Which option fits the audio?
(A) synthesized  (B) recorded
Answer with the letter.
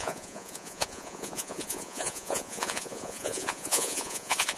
A